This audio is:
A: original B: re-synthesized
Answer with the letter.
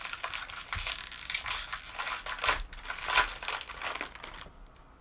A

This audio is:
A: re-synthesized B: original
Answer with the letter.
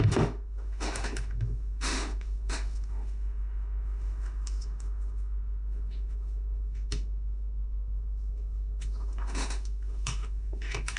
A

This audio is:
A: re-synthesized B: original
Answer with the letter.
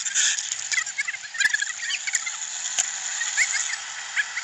B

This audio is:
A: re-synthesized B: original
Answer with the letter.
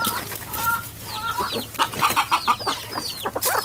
B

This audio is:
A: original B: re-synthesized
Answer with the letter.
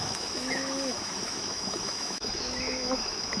B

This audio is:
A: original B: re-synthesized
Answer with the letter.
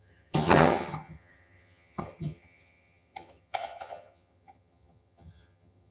B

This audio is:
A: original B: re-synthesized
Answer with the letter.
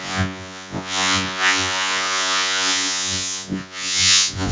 B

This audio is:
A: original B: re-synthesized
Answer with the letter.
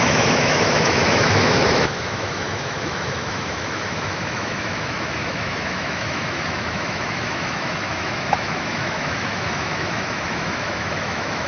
B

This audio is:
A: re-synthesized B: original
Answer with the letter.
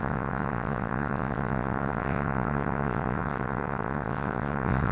A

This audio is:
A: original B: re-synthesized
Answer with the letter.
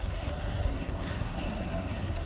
B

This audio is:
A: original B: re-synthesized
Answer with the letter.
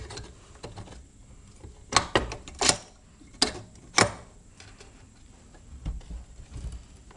A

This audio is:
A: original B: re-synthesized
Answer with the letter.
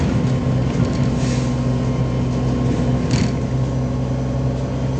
A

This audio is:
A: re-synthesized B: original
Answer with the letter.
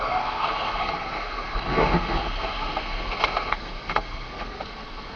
A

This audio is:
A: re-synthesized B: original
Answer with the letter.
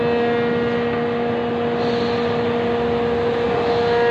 B